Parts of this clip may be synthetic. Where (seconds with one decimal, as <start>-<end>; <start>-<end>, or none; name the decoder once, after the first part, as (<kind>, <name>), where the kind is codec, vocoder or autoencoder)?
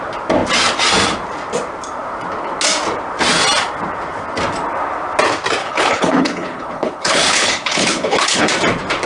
5.6-8.5 (codec, HILCodec)